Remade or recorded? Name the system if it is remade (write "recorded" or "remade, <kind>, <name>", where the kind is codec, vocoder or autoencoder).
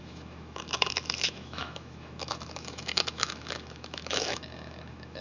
remade, autoencoder, DAC-VAE